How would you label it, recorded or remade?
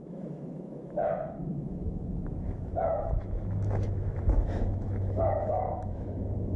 remade